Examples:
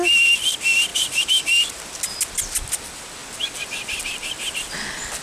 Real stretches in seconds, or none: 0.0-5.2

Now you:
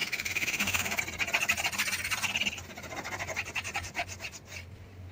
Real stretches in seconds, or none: 1.0-5.1

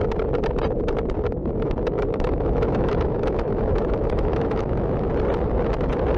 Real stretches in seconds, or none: 0.0-1.4; 5.1-6.2